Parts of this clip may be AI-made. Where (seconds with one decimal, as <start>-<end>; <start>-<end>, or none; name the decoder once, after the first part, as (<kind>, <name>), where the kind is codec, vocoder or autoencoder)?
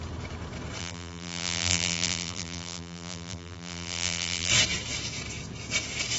0.8-4.5 (vocoder, BigVGAN v2)